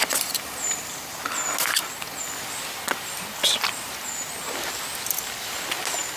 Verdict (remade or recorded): recorded